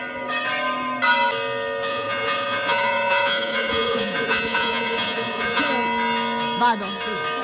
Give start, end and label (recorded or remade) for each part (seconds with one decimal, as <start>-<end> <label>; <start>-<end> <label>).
0.0-1.9 recorded; 1.9-5.7 remade; 5.7-7.4 recorded